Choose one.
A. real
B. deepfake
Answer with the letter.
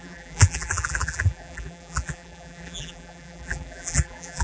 B